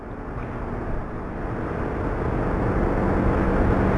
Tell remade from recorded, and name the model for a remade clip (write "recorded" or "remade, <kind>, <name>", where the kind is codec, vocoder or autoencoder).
recorded